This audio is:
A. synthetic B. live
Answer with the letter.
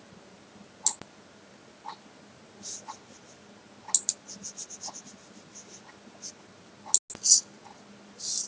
B